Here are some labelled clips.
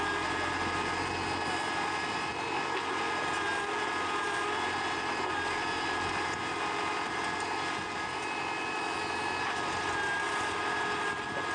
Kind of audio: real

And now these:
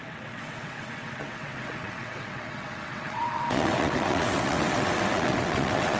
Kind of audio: fake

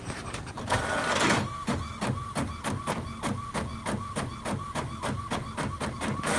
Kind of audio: real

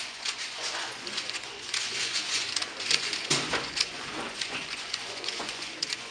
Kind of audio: fake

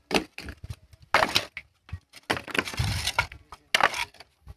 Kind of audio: real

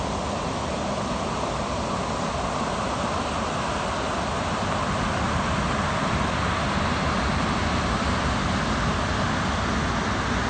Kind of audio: real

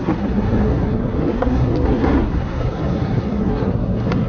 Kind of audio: fake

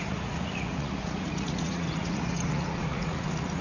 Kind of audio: fake